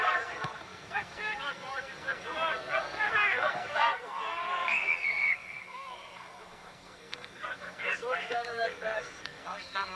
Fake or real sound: fake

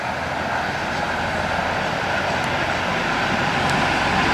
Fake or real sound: real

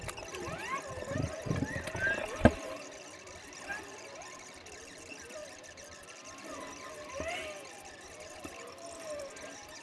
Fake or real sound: real